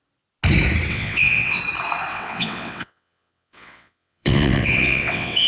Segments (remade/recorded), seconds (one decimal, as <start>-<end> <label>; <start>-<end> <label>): 0.0-0.9 recorded; 0.9-1.6 remade; 1.6-2.1 recorded; 2.1-5.5 remade